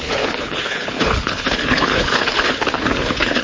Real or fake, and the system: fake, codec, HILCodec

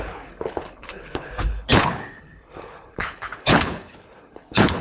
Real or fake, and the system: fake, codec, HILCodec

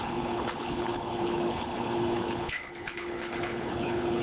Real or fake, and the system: fake, codec, HILCodec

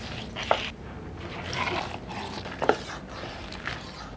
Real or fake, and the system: real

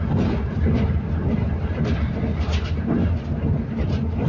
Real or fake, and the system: real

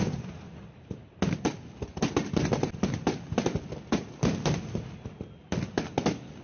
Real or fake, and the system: real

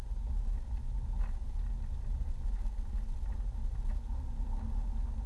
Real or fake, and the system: real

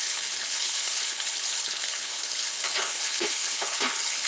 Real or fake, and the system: fake, codec, HILCodec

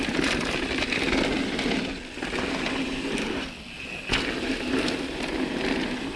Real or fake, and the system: real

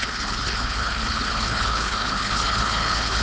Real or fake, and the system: fake, codec, HILCodec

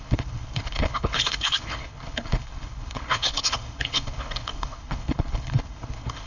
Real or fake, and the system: fake, codec, HILCodec